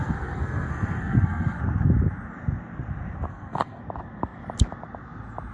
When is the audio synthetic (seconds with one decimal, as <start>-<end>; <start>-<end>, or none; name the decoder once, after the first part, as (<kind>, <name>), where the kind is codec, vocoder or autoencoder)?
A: 0.0-1.6 (codec, SNAC); 3.3-3.8